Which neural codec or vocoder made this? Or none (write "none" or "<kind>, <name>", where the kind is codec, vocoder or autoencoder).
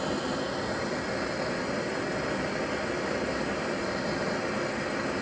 none